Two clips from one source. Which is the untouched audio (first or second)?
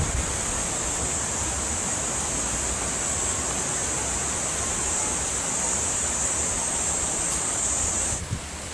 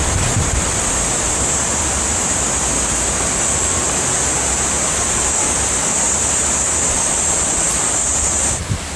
second